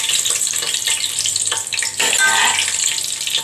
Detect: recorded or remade recorded